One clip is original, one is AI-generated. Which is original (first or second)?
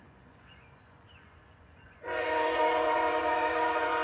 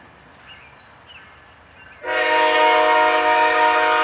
second